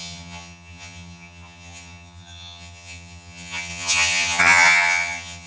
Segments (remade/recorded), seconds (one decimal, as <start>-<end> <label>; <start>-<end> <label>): 0.0-5.5 remade